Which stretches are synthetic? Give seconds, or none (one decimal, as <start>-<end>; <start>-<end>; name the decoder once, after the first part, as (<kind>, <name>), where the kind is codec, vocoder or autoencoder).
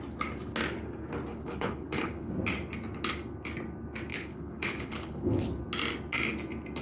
1.3-2.3 (codec, HILCodec); 4.1-5.5